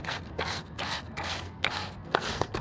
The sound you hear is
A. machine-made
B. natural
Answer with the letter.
A